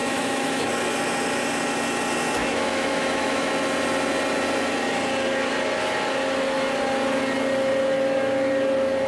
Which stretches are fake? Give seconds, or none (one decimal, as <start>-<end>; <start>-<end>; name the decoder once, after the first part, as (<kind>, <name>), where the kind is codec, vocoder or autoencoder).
0.0-0.7 (autoencoder, DAC-VAE); 2.4-3.5